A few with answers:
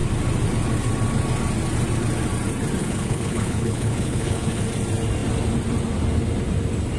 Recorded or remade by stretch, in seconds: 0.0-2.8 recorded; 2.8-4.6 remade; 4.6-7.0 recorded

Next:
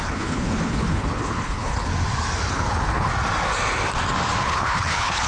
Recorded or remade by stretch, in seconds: 0.0-1.9 remade; 1.9-2.5 recorded; 2.5-3.1 remade; 3.1-4.4 recorded; 4.4-5.3 remade

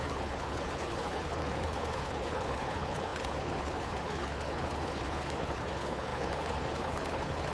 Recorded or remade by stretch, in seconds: 0.0-7.5 remade

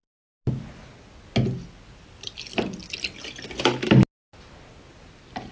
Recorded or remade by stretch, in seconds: 0.0-5.5 recorded

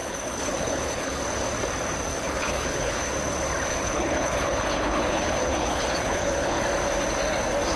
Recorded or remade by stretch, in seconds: 0.0-1.2 remade; 1.2-2.1 recorded; 2.1-3.1 remade; 3.1-3.7 recorded; 3.7-6.6 remade; 6.6-7.8 recorded